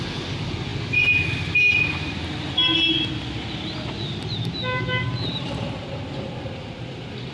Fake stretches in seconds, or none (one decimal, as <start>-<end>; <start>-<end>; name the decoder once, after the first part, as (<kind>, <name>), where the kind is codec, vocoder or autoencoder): none